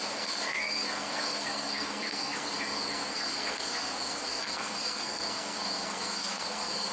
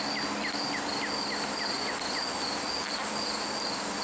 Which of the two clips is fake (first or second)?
first